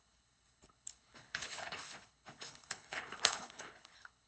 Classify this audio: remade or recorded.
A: remade